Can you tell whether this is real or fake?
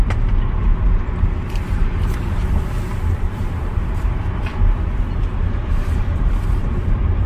fake